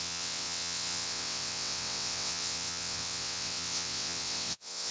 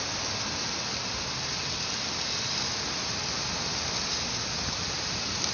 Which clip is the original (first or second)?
second